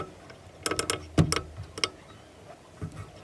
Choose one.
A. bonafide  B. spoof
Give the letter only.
A